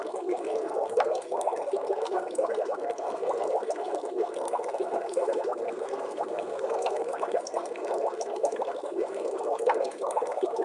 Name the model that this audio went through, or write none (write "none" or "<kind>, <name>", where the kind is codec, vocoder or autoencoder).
codec, SNAC